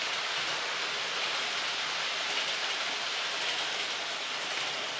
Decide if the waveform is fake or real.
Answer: fake